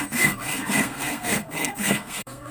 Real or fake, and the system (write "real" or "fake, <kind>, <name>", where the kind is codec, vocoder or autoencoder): fake, codec, SNAC